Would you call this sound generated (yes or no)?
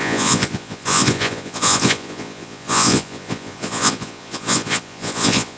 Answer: yes